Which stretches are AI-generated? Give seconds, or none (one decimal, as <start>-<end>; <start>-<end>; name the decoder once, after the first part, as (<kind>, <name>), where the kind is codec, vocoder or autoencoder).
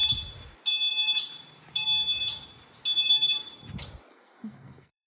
3.1-3.5 (codec, SNAC); 4.1-5.1